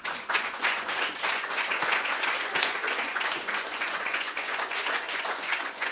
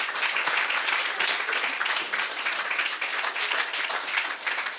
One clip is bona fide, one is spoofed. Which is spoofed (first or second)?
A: first